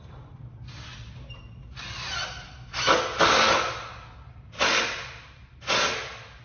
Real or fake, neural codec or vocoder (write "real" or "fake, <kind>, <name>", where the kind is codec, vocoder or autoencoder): real